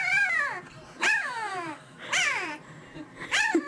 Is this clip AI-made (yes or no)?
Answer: yes